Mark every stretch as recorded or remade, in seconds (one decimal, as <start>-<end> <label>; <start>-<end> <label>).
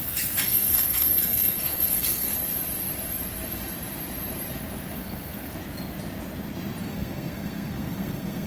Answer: 0.0-2.3 remade; 2.3-4.9 recorded; 4.9-5.6 remade; 5.6-6.8 recorded; 6.8-8.5 remade